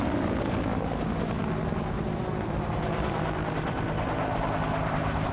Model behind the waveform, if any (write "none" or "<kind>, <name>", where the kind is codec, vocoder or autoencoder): none